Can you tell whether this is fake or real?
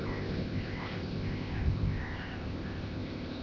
fake